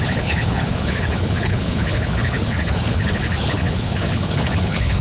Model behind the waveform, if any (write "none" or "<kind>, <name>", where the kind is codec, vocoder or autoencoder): codec, HILCodec